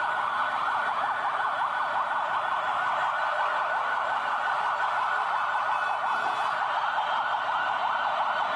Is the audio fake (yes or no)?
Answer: no